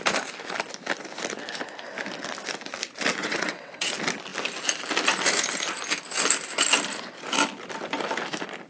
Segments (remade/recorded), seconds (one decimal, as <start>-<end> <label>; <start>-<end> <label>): 0.0-3.2 recorded; 3.2-3.9 remade; 3.9-8.7 recorded